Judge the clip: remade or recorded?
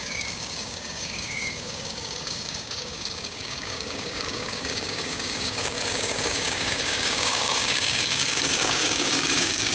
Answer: remade